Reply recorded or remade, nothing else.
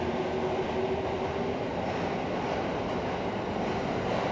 recorded